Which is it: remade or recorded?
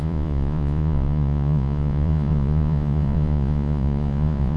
remade